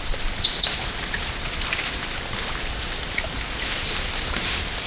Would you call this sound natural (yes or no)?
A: yes